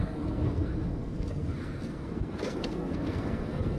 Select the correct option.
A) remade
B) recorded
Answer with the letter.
A